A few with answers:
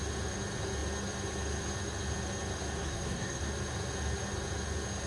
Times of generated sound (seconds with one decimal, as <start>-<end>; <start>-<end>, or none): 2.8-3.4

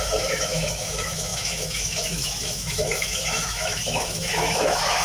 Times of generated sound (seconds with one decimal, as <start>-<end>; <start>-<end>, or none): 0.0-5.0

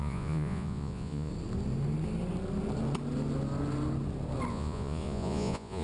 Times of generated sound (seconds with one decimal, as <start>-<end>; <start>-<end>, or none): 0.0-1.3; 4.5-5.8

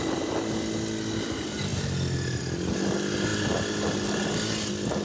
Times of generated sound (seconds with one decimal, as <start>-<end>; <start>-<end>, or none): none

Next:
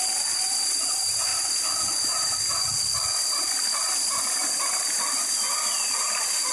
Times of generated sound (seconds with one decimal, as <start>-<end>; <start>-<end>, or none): none

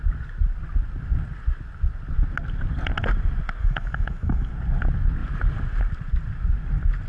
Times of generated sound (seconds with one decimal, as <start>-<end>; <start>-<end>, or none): 3.6-4.5

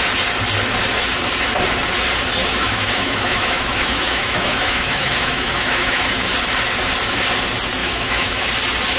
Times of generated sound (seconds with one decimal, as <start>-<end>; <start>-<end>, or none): 2.4-6.3; 7.8-8.5